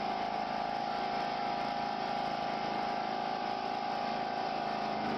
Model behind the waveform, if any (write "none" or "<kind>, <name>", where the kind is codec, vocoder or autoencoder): none